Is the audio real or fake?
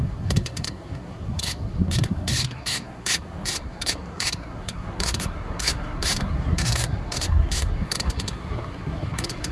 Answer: fake